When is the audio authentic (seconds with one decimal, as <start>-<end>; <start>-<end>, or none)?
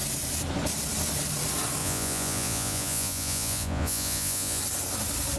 0.0-1.8; 4.6-5.4